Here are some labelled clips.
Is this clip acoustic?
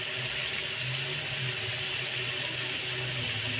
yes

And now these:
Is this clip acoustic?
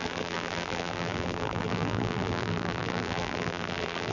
no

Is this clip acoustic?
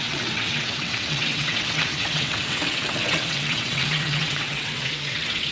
no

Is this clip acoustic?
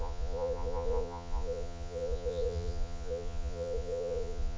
no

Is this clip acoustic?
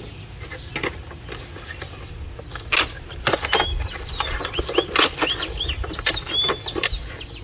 yes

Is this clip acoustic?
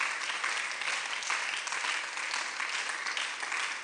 yes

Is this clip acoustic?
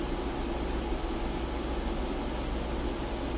yes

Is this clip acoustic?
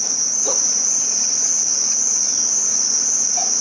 yes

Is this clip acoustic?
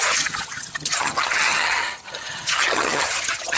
no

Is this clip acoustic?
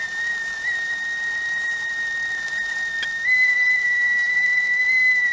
yes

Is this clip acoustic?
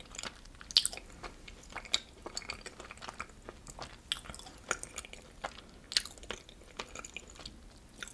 yes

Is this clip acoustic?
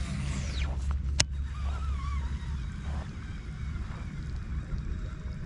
yes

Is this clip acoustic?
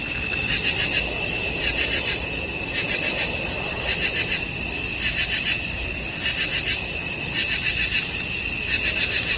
yes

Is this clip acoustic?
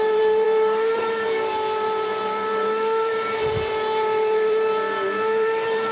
no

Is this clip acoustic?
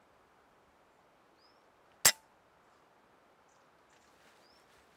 yes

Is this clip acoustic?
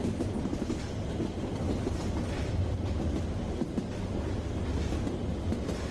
yes